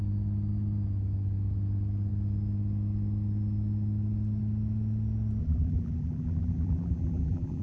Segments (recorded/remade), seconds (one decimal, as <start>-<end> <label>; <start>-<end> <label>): 0.0-5.4 recorded; 5.4-7.6 remade